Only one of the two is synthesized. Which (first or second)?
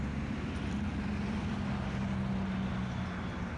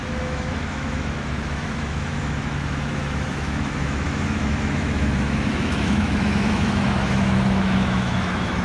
second